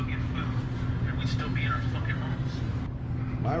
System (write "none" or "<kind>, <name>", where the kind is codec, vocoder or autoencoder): none